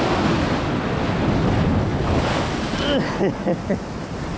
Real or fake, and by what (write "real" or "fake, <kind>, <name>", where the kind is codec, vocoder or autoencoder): real